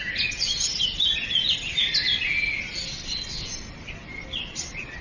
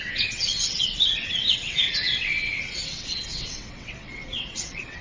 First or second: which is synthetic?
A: second